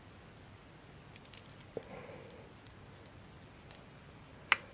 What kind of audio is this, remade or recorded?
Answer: recorded